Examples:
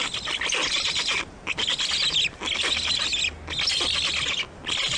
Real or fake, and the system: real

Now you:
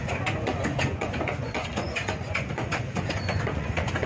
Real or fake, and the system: fake, vocoder, Vocos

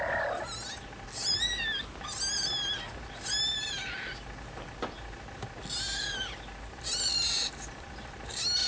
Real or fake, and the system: real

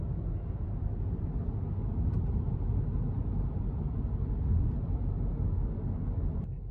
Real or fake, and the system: real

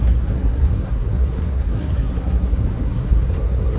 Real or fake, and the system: fake, codec, SNAC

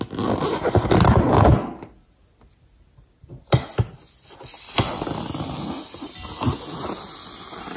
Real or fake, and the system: real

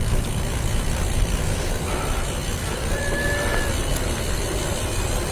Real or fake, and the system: real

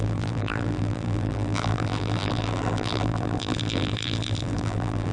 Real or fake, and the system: fake, vocoder, BigVGAN v2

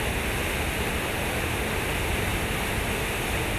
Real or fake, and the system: real